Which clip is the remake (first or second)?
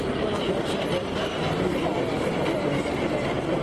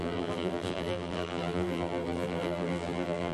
second